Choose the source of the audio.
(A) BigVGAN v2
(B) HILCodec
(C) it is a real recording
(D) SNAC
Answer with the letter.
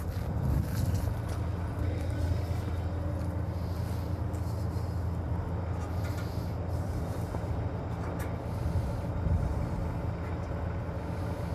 C